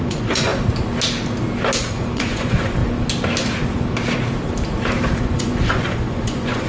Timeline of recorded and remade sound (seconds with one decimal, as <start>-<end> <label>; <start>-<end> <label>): 0.0-0.5 remade; 0.5-1.9 recorded; 1.9-2.8 remade; 2.8-5.2 recorded; 5.2-6.7 remade